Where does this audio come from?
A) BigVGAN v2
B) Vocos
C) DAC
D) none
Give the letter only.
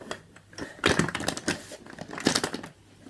D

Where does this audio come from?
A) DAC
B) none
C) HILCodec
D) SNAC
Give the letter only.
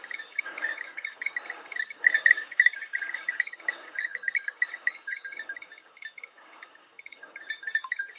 A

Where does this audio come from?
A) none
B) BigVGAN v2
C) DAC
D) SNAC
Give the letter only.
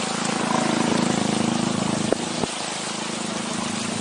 A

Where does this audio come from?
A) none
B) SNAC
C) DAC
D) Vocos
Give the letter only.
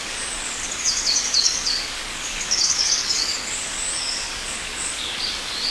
C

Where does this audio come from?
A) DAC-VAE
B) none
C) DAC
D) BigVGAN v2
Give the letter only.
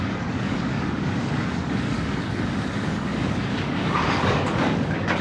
C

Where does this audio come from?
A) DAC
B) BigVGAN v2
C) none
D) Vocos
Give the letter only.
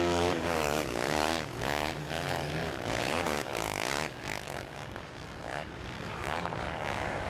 A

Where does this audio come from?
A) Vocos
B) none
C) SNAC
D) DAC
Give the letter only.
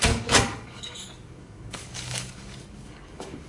D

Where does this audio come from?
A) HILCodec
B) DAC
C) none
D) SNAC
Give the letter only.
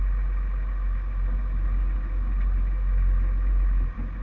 C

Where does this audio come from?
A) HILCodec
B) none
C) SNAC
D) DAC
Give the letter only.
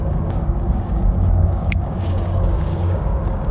D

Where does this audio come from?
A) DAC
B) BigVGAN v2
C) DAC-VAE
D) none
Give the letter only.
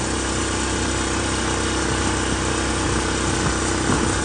D